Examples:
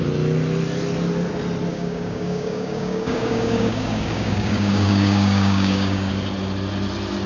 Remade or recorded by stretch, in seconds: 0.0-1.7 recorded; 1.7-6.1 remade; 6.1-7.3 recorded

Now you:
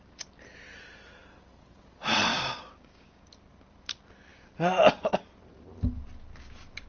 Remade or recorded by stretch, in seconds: 0.0-2.3 recorded; 2.3-3.3 remade; 3.3-6.9 recorded

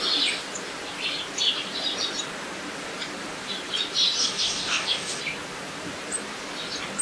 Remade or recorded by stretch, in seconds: 0.0-4.2 recorded; 4.2-5.2 remade; 5.2-7.0 recorded

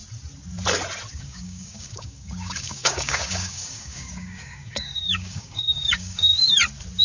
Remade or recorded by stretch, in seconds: 0.0-1.1 recorded; 1.1-6.3 remade; 6.3-7.0 recorded

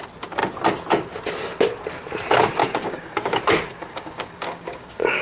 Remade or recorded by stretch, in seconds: 0.0-2.6 recorded; 2.6-3.4 remade; 3.4-3.9 recorded; 3.9-5.2 remade